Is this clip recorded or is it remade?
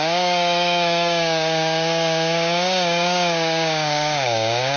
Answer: remade